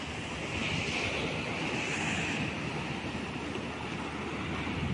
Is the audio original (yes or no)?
yes